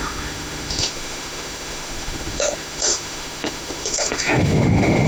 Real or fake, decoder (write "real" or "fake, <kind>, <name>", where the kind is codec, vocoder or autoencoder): fake, autoencoder, DAC-VAE